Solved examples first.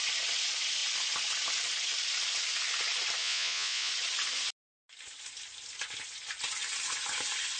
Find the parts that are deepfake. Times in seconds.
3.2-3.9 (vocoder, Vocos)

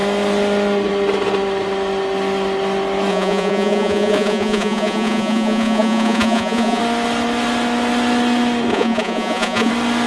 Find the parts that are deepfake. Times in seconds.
3.1-6.8 (vocoder, Vocos); 8.7-9.7

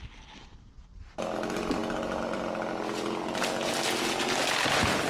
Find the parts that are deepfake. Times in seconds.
none

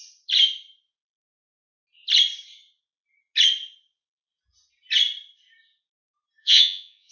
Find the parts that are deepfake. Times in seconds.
6.4-7.1 (vocoder, Vocos)

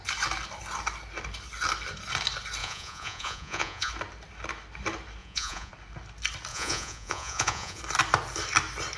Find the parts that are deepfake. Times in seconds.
2.6-3.9 (vocoder, Vocos); 5.2-5.7; 6.5-7.8

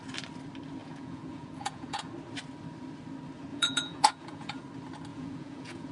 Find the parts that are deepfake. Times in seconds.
0.8-2.1 (vocoder, Vocos); 3.5-4.6; 5.1-5.9

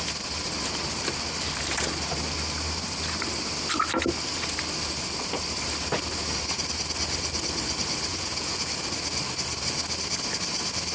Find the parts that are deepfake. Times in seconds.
8.1-8.7 (vocoder, Vocos)